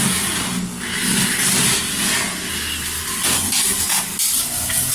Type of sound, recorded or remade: recorded